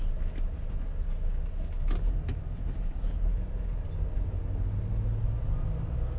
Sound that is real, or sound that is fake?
real